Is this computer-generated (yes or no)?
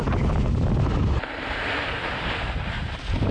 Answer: no